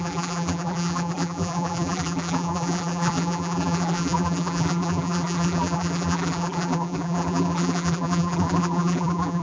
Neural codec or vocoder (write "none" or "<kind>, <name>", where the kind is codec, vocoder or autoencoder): vocoder, BigVGAN v2